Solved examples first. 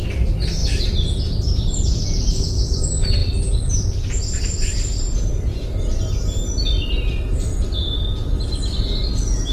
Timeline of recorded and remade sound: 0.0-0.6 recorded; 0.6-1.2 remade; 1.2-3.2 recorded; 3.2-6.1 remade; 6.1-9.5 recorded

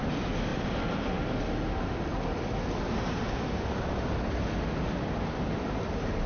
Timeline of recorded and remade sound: 0.0-6.3 recorded

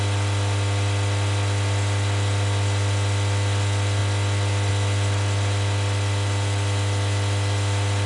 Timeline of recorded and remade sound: 0.0-8.1 recorded

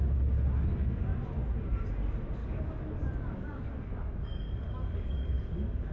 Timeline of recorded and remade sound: 0.0-2.4 recorded; 2.4-5.9 remade

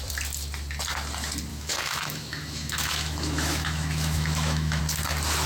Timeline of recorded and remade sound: 0.0-1.5 recorded; 1.5-4.8 remade; 4.8-5.5 recorded

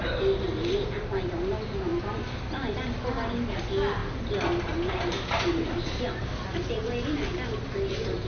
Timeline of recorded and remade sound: 0.0-8.3 recorded

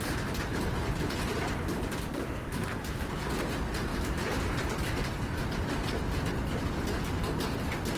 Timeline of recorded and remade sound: 0.0-2.1 recorded; 2.1-2.9 remade; 2.9-8.0 recorded

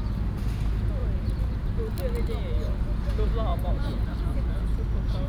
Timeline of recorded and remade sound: 0.0-1.0 recorded; 1.0-1.6 remade; 1.6-3.5 recorded; 3.5-4.5 remade; 4.5-5.3 recorded